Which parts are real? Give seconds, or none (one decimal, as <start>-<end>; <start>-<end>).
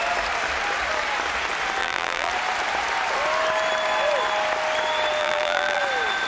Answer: 0.0-1.8; 2.3-5.2; 5.8-6.3